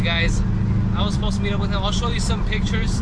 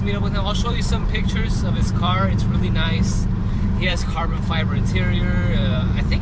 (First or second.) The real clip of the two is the first